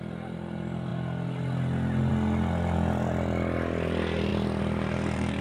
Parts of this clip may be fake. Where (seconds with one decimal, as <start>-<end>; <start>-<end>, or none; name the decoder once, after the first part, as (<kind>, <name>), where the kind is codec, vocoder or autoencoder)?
4.3-5.4 (vocoder, BigVGAN v2)